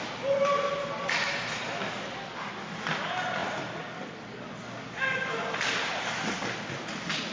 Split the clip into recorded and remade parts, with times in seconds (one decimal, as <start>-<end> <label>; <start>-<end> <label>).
0.0-7.3 recorded